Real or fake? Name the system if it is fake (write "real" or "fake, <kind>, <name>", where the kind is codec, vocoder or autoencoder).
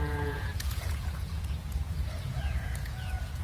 fake, vocoder, Vocos